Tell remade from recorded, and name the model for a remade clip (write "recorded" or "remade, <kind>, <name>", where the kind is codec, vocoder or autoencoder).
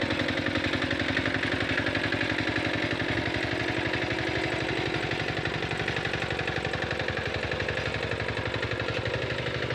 recorded